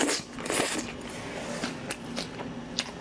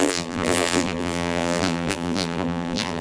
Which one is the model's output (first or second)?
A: second